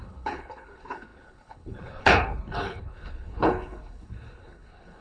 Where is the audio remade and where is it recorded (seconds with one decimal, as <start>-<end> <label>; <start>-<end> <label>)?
0.0-5.0 remade